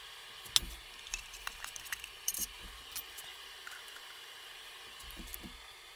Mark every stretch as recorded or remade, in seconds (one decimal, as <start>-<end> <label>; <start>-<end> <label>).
0.0-1.1 recorded; 1.1-2.8 remade; 2.8-3.3 recorded; 3.3-4.8 remade; 4.8-6.0 recorded